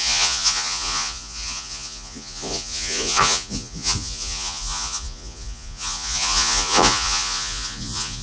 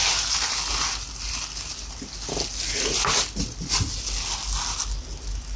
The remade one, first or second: first